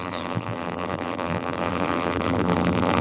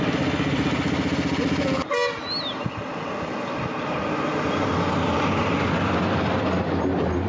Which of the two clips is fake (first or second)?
first